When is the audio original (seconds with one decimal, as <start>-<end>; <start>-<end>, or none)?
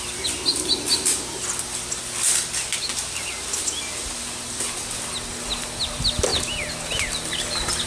0.0-7.9